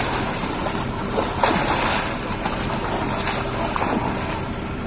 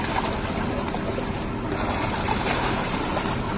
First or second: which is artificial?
second